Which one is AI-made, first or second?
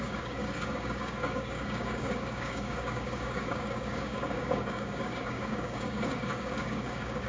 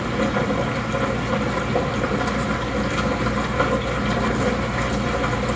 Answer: first